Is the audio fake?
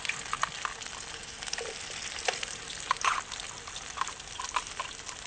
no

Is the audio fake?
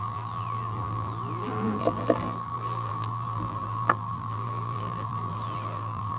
yes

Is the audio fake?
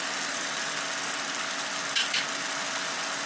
no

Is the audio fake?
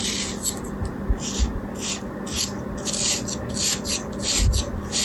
no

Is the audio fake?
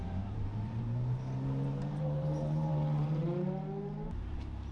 yes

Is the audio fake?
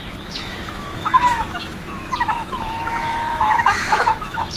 yes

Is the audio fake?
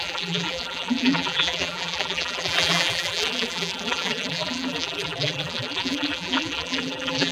yes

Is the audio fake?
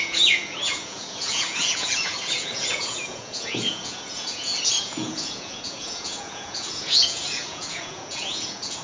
yes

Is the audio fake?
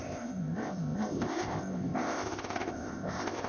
yes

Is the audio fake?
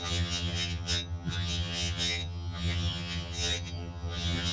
yes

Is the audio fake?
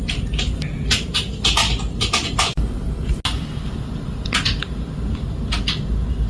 no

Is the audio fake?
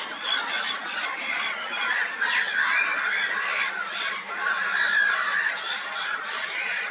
yes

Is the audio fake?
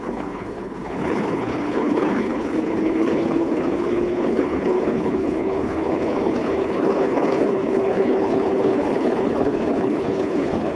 yes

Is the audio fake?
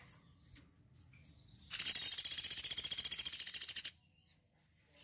no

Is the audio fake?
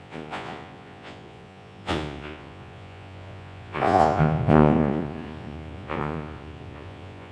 yes